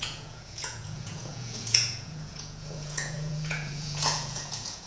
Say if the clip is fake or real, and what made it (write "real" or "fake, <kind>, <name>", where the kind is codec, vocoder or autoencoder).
fake, vocoder, Vocos